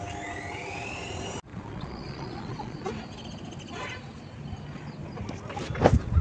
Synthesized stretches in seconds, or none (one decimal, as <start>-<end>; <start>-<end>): 1.5-2.9